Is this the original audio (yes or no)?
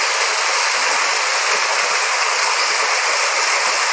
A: yes